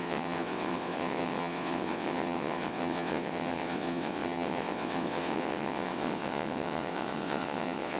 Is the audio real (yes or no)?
no